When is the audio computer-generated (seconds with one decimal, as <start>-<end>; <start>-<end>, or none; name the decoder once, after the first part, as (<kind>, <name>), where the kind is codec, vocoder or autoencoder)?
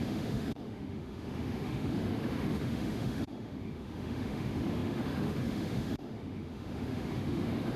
0.0-7.8 (autoencoder, DAC-VAE)